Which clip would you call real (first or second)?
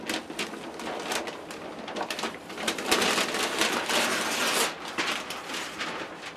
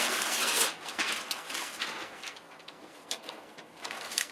first